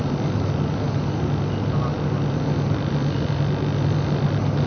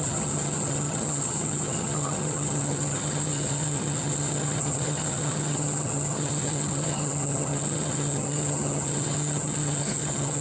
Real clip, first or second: first